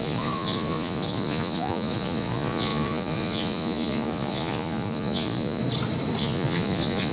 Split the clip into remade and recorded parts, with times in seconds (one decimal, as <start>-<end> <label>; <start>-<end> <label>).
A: 0.0-5.6 remade; 5.6-6.2 recorded; 6.2-7.1 remade